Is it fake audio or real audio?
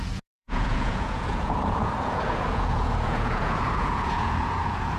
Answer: fake